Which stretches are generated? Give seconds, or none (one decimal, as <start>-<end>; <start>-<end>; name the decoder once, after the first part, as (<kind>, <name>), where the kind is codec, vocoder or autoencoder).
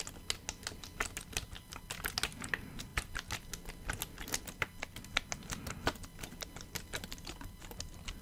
none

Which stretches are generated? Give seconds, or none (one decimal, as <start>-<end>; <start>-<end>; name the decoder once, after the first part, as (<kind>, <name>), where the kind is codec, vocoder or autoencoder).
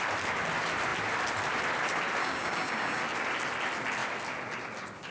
2.2-3.0 (codec, DAC)